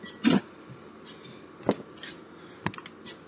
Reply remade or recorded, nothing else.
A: recorded